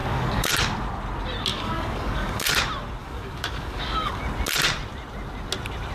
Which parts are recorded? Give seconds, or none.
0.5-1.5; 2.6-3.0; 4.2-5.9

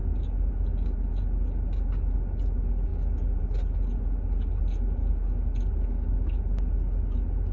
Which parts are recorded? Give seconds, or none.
0.0-7.5